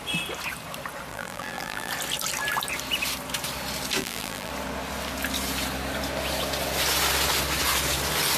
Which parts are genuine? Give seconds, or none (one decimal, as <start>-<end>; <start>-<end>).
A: 0.0-1.1; 1.9-4.0; 4.5-8.4